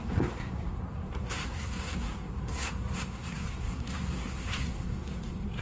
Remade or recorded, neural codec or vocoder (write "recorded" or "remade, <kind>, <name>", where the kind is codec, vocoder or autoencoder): remade, codec, SNAC